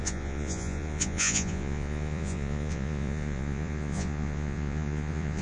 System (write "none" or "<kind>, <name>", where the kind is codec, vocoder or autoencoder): vocoder, Vocos